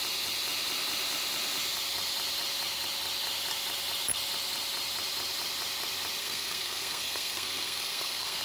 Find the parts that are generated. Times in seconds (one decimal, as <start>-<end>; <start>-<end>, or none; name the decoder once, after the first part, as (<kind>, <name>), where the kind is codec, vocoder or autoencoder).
6.2-8.4 (codec, SNAC)